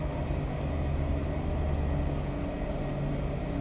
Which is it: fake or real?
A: real